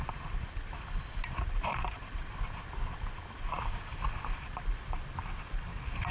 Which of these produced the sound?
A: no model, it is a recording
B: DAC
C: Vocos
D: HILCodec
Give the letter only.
A